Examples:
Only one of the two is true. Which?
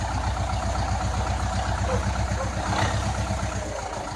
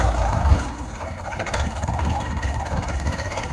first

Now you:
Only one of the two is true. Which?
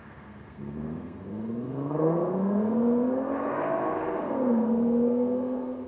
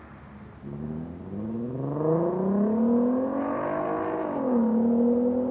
second